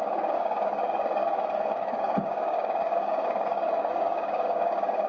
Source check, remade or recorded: remade